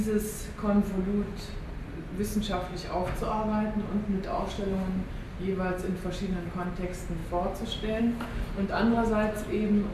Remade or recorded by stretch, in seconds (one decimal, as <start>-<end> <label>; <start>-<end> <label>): 0.0-9.9 recorded